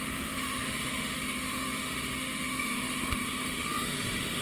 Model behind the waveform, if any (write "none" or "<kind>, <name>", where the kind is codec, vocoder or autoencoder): autoencoder, DAC-VAE